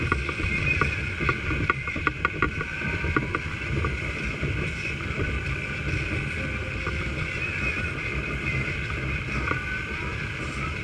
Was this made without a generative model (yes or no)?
yes